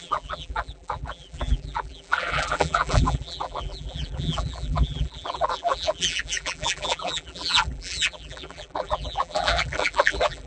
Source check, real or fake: fake